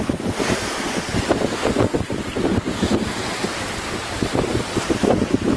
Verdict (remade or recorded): recorded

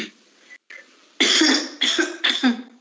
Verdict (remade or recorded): recorded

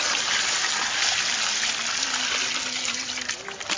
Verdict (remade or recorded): recorded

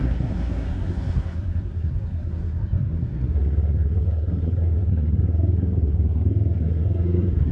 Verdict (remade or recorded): remade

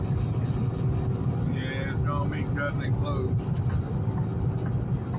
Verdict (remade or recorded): recorded